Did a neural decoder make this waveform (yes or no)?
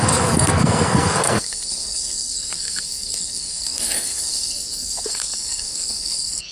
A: yes